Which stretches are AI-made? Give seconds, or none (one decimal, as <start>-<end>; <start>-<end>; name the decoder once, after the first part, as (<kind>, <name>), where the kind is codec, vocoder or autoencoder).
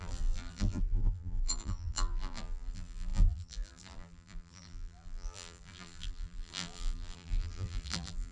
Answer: 0.0-8.3 (vocoder, BigVGAN v2)